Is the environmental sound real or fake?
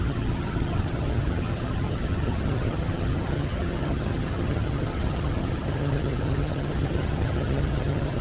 fake